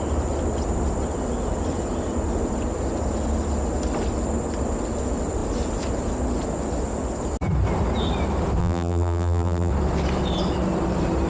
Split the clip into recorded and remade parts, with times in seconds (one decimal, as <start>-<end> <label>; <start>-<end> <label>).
0.0-8.6 recorded; 8.6-9.7 remade; 9.7-11.3 recorded